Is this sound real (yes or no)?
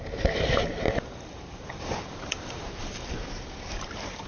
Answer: no